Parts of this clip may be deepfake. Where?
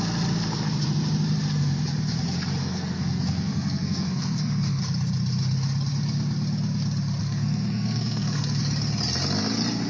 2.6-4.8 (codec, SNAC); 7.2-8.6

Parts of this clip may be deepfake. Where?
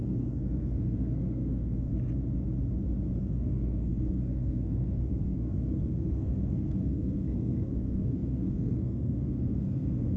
0.0-1.9 (codec, SNAC); 3.2-10.2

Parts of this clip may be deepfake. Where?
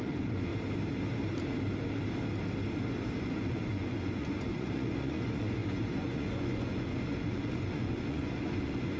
0.0-0.5 (vocoder, Vocos); 3.2-9.0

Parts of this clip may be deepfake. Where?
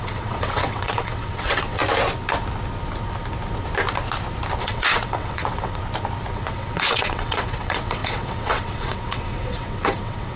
0.0-1.8 (vocoder, WaveNeXt); 4.6-5.8; 6.3-10.4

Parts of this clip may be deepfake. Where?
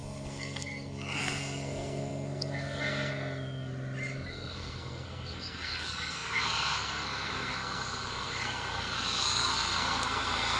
0.0-3.7 (codec, SNAC); 4.3-10.6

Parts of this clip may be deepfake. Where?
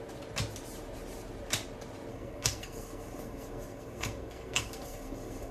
2.1-5.5 (codec, SNAC)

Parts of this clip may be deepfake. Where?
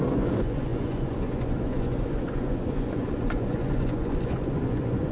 0.0-5.1 (vocoder, Vocos)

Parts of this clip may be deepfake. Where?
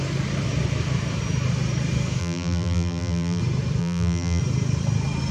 2.2-3.4 (vocoder, BigVGAN v2); 3.8-4.4